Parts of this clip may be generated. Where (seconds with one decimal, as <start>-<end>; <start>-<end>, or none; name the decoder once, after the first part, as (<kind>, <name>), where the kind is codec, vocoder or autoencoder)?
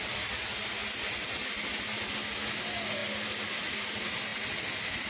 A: none